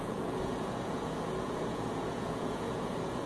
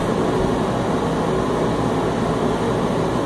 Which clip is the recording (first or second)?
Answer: second